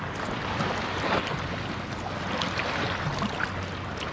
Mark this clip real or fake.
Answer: real